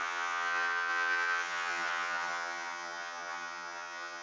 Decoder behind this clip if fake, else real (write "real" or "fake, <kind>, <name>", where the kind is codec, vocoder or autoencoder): fake, vocoder, HiFi-GAN